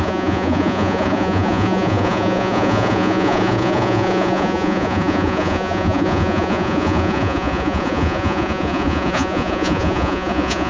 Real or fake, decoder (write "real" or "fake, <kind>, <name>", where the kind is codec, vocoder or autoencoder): fake, vocoder, Vocos